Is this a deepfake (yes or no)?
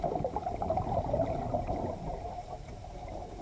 yes